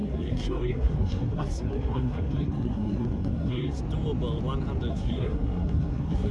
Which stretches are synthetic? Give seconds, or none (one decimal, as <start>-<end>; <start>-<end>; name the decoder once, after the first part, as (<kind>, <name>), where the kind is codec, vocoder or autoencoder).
0.0-3.8 (codec, SNAC); 4.9-6.3